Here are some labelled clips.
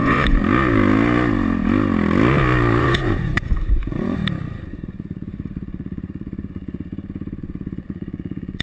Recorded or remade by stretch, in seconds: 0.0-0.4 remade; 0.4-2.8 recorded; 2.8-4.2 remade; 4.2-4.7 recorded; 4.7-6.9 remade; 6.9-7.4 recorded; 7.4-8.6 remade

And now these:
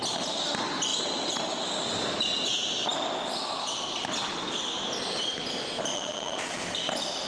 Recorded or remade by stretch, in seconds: 0.0-5.9 recorded; 5.9-6.6 remade; 6.6-7.3 recorded

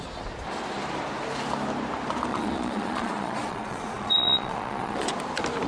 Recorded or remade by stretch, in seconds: 0.0-2.3 recorded; 2.3-5.1 remade; 5.1-5.7 recorded